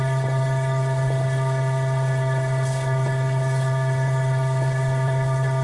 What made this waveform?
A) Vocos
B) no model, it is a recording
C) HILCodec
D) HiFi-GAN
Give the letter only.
C